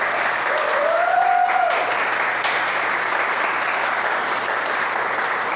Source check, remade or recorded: recorded